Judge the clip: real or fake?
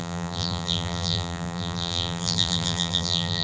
fake